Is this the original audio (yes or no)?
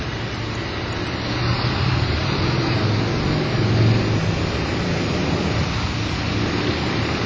yes